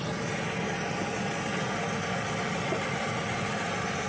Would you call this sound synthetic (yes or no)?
no